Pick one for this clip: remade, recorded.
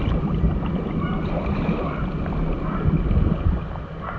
recorded